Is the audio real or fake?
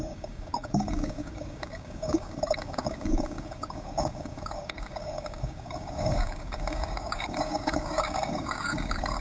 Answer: fake